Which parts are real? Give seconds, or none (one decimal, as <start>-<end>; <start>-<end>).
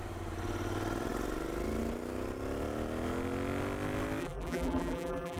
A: 0.0-4.2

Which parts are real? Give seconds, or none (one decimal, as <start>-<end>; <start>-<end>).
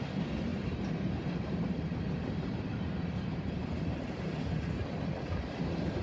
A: 0.0-0.5; 4.1-6.0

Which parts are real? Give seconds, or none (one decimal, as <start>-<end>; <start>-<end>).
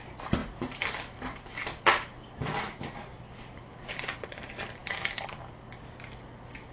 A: 0.0-0.4; 3.9-4.8; 5.4-6.7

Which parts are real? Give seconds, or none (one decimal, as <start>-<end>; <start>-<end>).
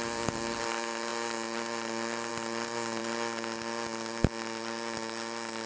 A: 3.0-5.7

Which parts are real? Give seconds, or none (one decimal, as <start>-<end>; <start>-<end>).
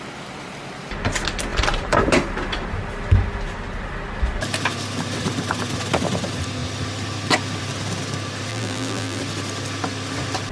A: 0.0-8.5; 9.2-10.5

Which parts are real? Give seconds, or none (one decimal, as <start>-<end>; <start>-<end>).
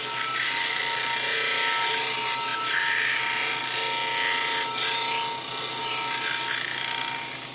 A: 0.0-2.5; 3.6-7.5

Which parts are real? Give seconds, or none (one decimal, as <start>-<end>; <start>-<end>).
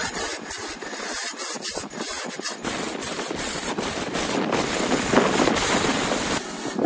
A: 0.0-2.1; 5.9-6.9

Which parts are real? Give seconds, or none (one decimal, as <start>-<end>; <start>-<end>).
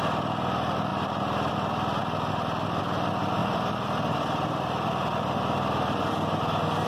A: 0.0-3.4; 6.1-6.9